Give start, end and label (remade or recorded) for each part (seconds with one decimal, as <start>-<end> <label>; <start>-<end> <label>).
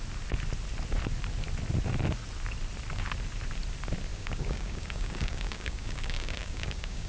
0.0-4.1 recorded; 4.1-7.1 remade